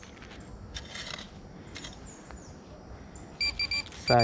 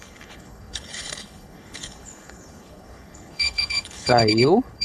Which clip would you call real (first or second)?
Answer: first